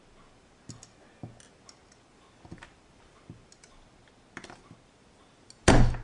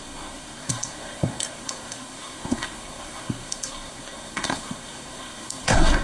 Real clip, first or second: first